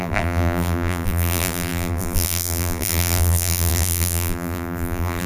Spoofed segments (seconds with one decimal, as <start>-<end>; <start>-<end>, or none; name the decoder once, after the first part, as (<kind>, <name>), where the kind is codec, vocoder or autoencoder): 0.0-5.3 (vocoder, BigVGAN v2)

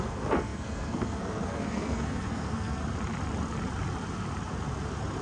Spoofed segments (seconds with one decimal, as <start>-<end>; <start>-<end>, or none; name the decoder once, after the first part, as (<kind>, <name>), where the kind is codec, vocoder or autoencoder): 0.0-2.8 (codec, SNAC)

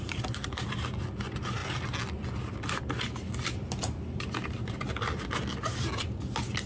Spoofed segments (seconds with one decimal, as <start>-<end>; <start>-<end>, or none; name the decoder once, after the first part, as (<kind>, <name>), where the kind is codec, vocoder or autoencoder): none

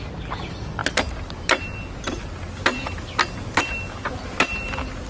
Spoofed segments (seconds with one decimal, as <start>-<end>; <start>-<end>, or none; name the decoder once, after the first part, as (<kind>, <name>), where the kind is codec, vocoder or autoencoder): none